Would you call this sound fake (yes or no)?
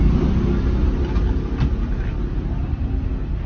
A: no